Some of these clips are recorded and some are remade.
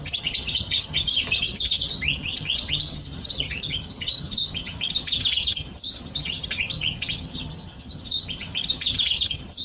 remade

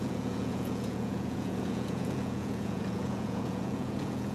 remade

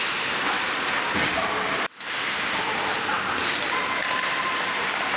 remade